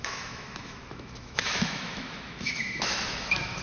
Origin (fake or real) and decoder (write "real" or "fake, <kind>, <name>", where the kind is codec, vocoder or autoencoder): fake, autoencoder, DAC-VAE